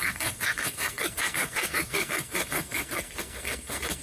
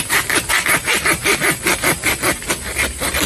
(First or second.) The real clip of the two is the second